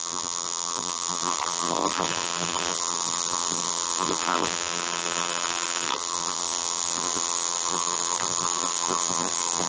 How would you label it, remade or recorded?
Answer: remade